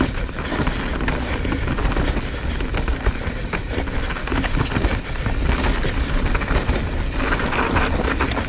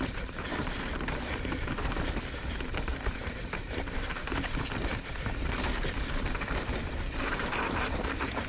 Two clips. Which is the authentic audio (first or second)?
first